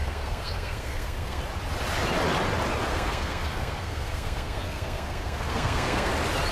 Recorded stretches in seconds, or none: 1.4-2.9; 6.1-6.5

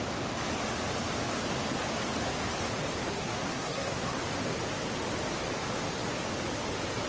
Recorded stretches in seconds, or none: 0.0-3.1; 4.2-7.1

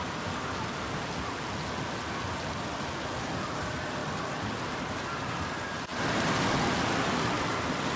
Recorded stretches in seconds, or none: 0.0-8.0